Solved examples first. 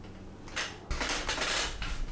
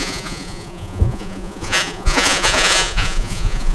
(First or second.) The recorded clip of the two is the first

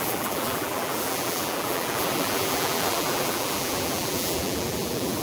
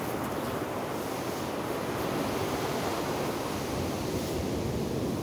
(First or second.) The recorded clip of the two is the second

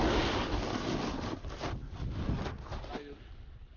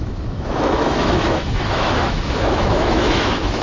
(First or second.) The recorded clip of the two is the first